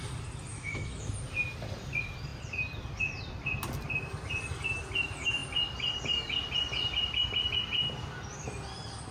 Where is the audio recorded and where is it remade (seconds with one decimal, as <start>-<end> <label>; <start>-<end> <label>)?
0.0-0.5 recorded; 0.5-1.1 remade; 1.1-9.1 recorded